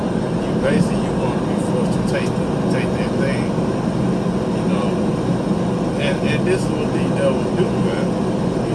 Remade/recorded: recorded